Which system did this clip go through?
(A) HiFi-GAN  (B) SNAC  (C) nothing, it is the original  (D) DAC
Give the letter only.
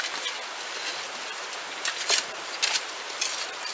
C